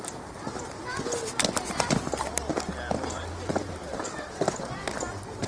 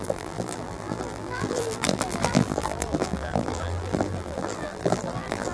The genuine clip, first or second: first